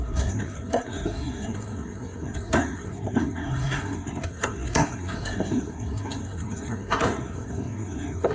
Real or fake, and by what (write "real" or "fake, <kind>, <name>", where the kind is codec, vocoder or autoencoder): fake, codec, SNAC